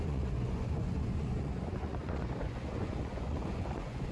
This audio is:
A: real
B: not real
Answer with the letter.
B